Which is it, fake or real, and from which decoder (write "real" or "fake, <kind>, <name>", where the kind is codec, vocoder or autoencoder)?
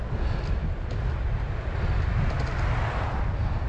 real